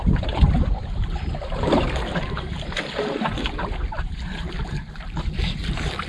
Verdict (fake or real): fake